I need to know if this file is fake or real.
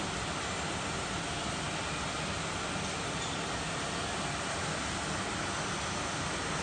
real